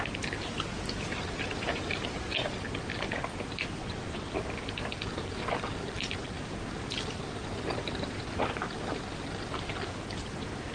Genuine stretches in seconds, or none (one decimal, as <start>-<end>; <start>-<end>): 0.0-3.8; 4.3-10.7

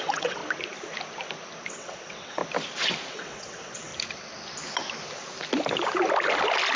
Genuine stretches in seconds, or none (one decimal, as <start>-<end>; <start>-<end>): 0.4-1.7; 2.4-3.1; 3.9-6.8